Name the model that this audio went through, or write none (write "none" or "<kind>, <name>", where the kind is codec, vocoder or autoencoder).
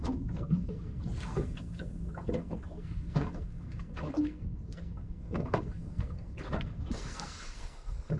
codec, SNAC